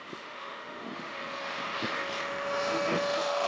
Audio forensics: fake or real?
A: fake